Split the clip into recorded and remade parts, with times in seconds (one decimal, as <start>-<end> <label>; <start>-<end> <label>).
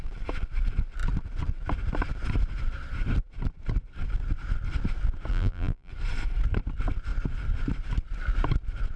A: 0.0-5.3 recorded; 5.3-5.9 remade; 5.9-9.0 recorded